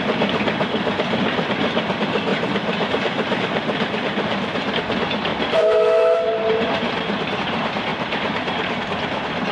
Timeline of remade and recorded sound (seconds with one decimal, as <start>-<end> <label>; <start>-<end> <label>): 0.0-2.3 recorded; 2.3-4.7 remade; 4.7-5.3 recorded; 5.3-7.4 remade; 7.4-7.9 recorded; 7.9-8.9 remade; 8.9-9.5 recorded